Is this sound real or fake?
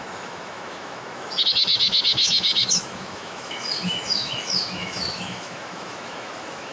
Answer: fake